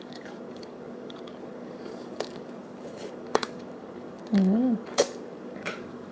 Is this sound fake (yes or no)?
yes